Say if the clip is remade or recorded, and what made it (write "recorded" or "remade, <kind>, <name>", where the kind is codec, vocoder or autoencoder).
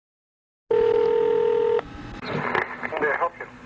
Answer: recorded